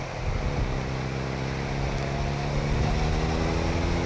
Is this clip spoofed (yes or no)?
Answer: no